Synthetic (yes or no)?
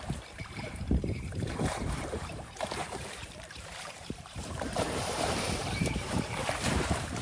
yes